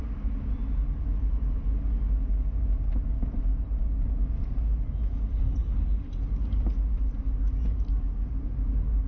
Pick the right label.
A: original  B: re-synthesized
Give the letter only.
A